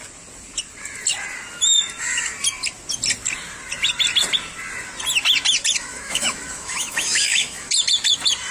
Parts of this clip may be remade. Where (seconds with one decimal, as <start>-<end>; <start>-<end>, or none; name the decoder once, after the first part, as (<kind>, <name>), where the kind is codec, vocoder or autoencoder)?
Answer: 5.8-7.7 (autoencoder, DAC-VAE)